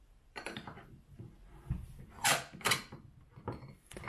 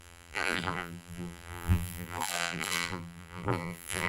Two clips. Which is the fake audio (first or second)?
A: second